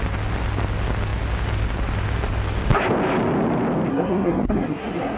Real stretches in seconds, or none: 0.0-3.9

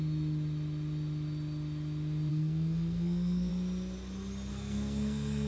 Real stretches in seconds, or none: 0.0-2.3; 3.5-4.5